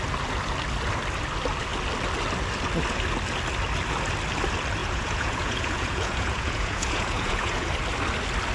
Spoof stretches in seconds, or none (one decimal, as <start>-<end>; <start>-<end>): 4.8-7.7